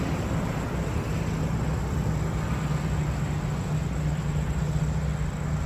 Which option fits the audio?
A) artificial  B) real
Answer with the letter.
B